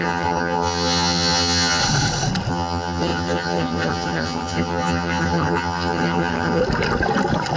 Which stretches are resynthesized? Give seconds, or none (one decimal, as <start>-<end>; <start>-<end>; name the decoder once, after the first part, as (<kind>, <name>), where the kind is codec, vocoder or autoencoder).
0.0-1.8 (vocoder, HiFi-GAN); 2.5-6.6